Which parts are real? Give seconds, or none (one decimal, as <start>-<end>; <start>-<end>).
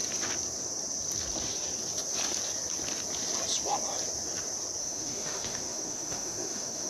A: 0.0-4.8